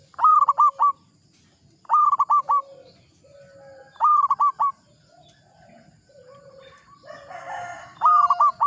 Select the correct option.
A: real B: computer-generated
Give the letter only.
A